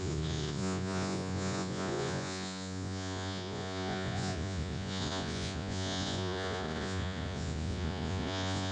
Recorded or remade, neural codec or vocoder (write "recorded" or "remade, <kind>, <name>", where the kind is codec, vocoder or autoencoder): remade, vocoder, Vocos